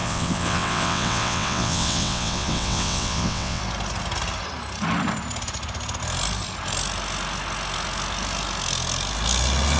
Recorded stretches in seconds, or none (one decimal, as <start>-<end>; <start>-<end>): 3.6-9.8